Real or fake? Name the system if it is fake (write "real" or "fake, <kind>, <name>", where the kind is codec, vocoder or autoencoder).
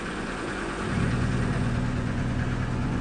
fake, vocoder, Vocos